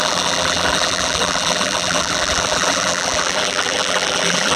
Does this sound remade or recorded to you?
remade